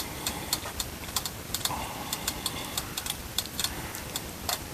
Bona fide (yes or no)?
no